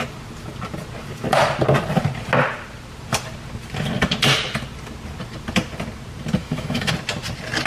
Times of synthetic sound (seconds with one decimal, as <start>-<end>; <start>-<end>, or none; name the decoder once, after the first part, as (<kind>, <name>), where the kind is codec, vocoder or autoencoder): 6.4-6.9 (autoencoder, DAC-VAE)